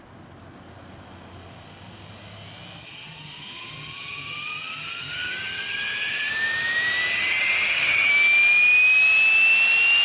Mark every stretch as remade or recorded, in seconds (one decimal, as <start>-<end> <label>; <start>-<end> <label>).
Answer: 0.0-2.8 recorded; 2.8-6.3 remade; 6.3-7.1 recorded; 7.1-8.1 remade; 8.1-10.0 recorded